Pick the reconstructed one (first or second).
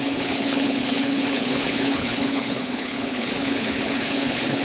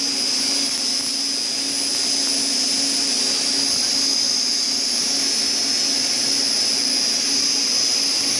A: first